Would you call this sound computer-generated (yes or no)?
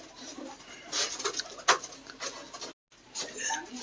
no